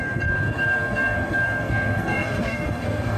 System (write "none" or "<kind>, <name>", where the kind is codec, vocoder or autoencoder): codec, SNAC